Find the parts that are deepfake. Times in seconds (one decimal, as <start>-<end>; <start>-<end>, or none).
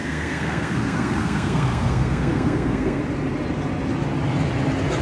0.0-3.0